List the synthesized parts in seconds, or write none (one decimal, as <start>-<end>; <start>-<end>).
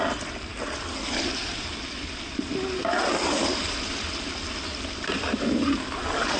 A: none